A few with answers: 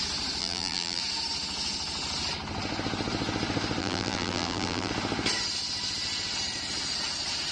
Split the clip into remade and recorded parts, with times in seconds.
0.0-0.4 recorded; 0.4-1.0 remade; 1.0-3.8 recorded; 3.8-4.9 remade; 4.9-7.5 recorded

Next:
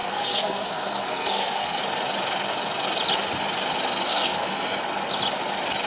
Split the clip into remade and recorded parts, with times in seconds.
0.0-1.8 remade; 1.8-4.1 recorded; 4.1-4.8 remade; 4.8-5.9 recorded

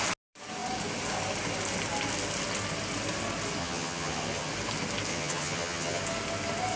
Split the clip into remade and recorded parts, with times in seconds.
0.0-3.6 recorded; 3.6-4.5 remade; 4.5-5.1 recorded; 5.1-6.0 remade; 6.0-6.8 recorded

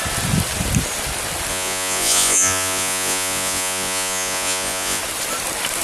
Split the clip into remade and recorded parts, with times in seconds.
0.0-1.5 recorded; 1.5-5.0 remade; 5.0-5.8 recorded